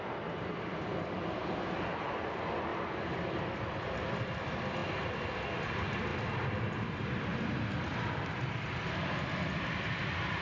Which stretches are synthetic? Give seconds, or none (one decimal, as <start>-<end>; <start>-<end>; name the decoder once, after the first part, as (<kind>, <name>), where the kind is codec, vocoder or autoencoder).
none